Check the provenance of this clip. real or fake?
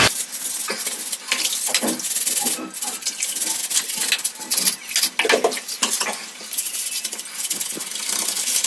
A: real